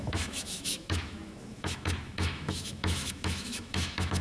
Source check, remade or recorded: remade